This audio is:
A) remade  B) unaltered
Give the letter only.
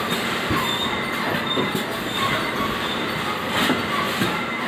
B